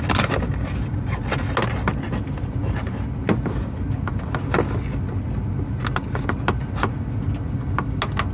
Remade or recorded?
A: recorded